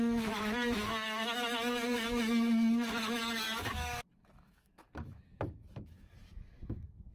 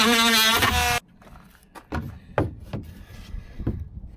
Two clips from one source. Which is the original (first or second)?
second